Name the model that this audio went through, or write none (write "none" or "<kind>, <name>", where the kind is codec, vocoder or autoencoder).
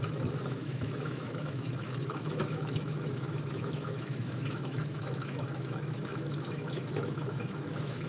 autoencoder, DAC-VAE